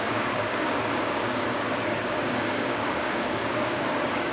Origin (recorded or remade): remade